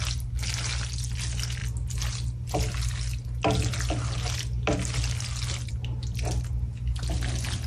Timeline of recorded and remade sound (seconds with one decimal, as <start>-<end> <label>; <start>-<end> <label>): 0.0-7.7 recorded